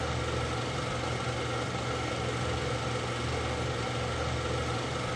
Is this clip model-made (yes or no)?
no